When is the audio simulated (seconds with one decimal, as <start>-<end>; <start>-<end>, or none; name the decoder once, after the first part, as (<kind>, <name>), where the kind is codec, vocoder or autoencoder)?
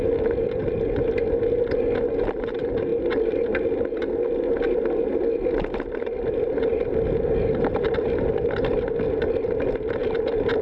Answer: none